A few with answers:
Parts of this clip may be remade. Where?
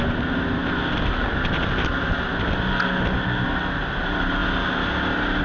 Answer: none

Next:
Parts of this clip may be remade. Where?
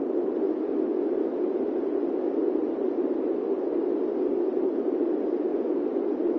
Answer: none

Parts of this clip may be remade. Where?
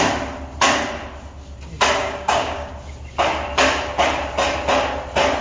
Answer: 2.0-2.7 (codec, DAC)